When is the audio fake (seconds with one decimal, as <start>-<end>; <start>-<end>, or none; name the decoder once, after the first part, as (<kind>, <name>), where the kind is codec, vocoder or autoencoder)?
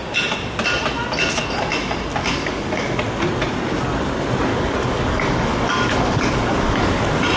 2.2-3.0 (codec, DAC); 4.5-6.9